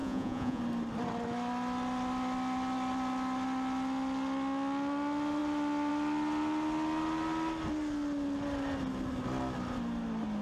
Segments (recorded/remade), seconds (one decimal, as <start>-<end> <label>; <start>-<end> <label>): 0.0-0.6 remade; 0.6-10.4 recorded